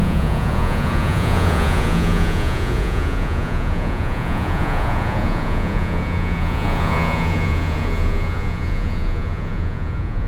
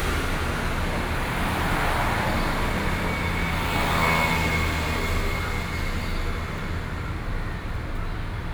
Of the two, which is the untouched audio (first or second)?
second